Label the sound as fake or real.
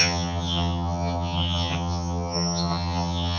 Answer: fake